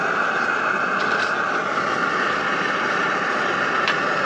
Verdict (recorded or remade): remade